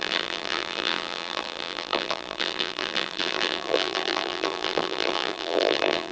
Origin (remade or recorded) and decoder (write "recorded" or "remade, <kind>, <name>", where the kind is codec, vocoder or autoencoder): remade, vocoder, BigVGAN v2